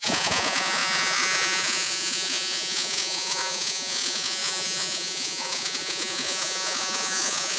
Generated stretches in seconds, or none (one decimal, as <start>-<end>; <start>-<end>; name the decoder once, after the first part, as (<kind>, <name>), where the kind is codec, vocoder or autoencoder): 0.0-7.6 (vocoder, Vocos)